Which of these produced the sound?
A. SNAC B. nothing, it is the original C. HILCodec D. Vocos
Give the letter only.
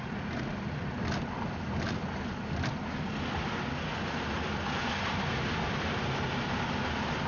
B